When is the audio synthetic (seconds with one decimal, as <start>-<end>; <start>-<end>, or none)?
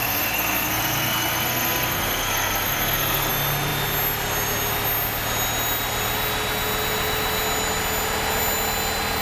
0.0-3.3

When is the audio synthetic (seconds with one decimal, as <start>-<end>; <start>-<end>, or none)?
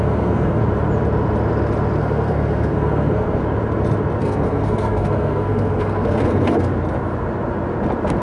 0.0-0.6; 2.0-3.4; 4.2-6.7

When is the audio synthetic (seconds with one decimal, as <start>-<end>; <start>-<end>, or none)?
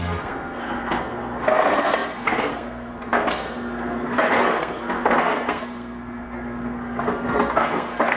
0.0-8.2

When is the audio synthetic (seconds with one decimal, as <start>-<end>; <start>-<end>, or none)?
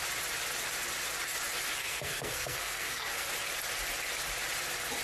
1.8-3.3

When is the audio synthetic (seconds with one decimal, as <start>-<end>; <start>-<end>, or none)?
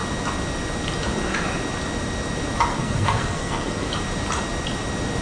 2.7-3.9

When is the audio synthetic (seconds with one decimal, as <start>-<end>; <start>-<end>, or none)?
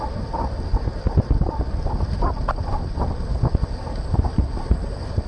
none